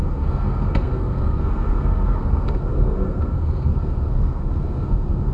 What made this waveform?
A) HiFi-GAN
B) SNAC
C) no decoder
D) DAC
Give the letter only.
B